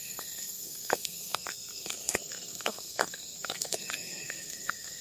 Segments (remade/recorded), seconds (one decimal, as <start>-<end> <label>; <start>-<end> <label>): 0.0-5.0 remade